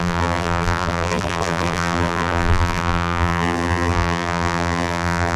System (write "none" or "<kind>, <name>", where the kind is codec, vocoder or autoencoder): vocoder, BigVGAN v2